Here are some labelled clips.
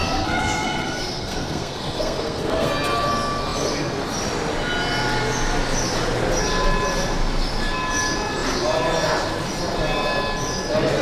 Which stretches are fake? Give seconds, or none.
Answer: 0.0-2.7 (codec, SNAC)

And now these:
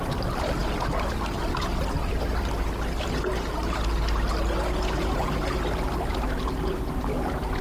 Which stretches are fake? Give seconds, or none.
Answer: none

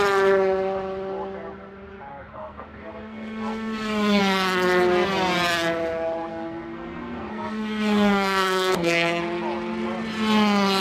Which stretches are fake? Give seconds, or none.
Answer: 2.1-4.2 (codec, SNAC); 6.3-9.2

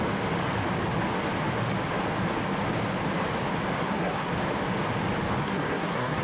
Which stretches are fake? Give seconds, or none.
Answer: 3.8-4.3 (codec, SNAC); 5.4-6.2

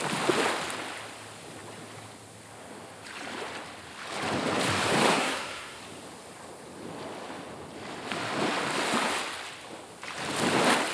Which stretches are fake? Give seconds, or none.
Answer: 5.1-5.8 (codec, SNAC)

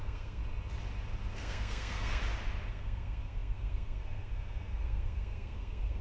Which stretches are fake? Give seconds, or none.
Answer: 0.0-0.4 (codec, SNAC); 1.4-2.2; 2.7-6.0

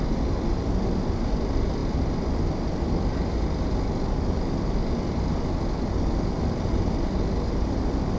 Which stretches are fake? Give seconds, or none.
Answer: none

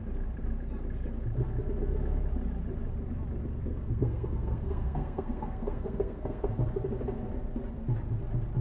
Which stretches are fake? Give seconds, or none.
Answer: 3.7-6.5 (codec, SNAC)